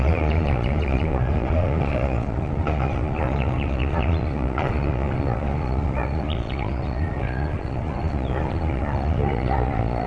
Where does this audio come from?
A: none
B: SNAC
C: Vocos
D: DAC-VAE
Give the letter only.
C